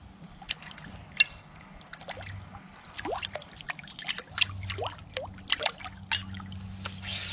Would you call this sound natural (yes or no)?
yes